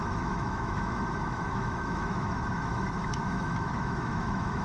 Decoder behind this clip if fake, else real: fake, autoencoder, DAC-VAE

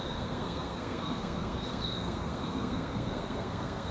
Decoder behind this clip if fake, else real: fake, codec, SNAC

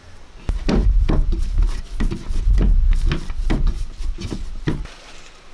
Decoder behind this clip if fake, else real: real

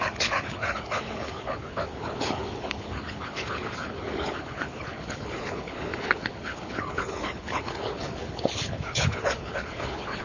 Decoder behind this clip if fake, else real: fake, codec, HILCodec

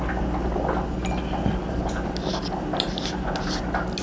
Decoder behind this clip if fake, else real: real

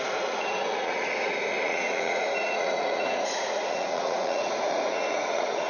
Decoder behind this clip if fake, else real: fake, vocoder, Vocos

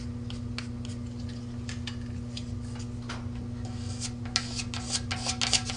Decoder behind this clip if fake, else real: real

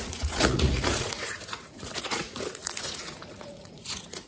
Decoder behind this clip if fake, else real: fake, vocoder, Vocos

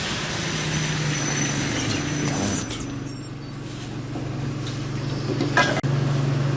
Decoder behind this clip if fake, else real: real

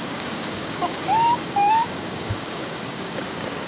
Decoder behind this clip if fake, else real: fake, codec, DAC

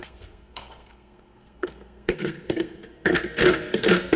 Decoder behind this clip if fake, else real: fake, codec, SNAC